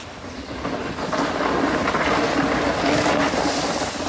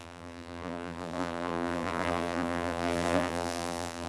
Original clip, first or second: first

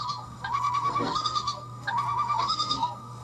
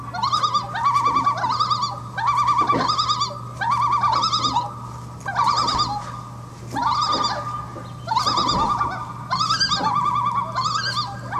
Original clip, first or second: second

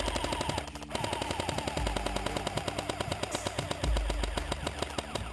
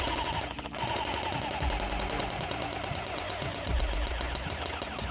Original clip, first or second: first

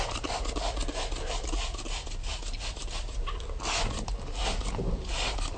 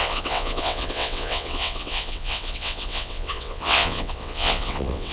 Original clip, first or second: first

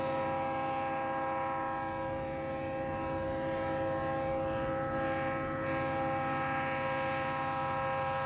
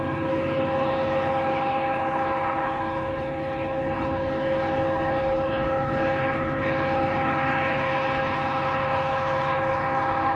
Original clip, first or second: first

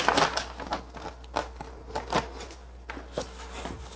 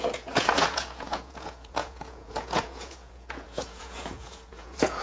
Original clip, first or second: first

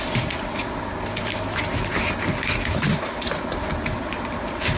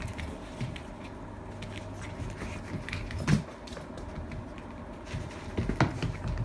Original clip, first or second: second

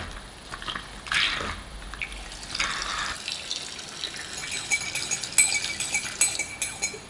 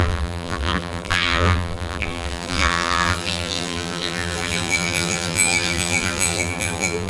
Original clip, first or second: first